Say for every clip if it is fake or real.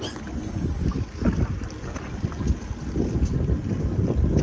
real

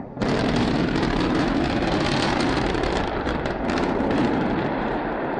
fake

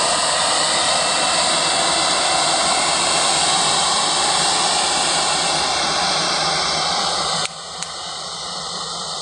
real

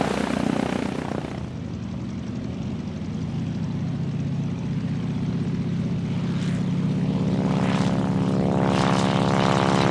real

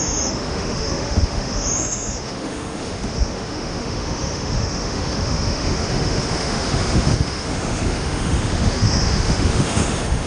fake